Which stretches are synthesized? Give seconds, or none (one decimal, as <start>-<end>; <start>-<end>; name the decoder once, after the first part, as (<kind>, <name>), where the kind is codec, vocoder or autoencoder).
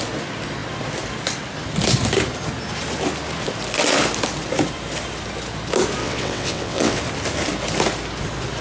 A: 6.0-7.0 (vocoder, WaveNeXt)